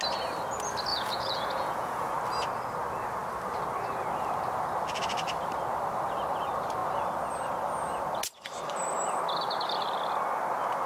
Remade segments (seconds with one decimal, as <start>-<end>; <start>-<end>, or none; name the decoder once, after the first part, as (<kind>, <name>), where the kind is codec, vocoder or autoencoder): 0.9-2.1 (vocoder, Vocos)